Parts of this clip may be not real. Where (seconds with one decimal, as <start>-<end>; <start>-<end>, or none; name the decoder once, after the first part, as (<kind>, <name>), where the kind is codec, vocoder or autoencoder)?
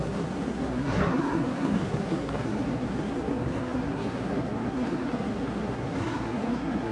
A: 0.0-6.9 (codec, SNAC)